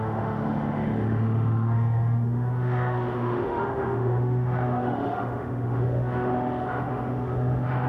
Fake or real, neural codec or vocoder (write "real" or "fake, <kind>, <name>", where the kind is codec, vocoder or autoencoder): fake, autoencoder, DAC-VAE